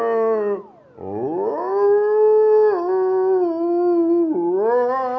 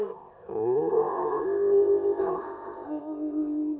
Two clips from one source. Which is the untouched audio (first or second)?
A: first